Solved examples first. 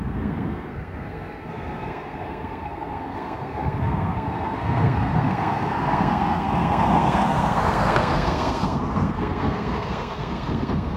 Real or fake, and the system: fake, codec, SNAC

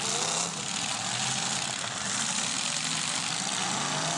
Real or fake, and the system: real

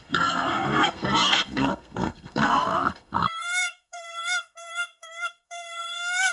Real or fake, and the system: fake, codec, SNAC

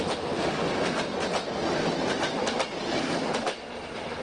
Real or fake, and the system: real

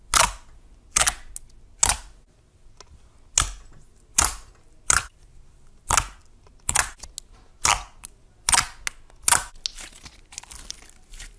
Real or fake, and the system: real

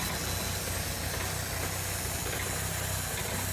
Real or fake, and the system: real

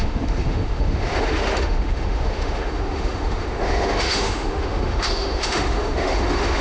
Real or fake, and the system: fake, autoencoder, DAC-VAE